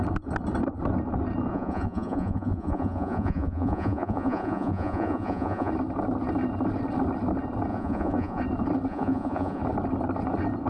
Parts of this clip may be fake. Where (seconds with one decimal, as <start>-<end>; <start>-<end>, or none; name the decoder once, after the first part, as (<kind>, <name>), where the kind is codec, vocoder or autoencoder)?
1.5-5.7 (vocoder, Vocos); 7.7-8.4; 8.9-9.6